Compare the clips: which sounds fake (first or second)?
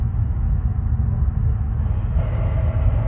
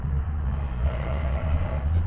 second